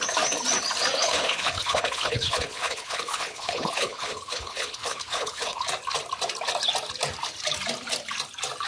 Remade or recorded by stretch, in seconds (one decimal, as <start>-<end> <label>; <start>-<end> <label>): 0.0-1.0 recorded; 1.0-5.6 remade; 5.6-8.7 recorded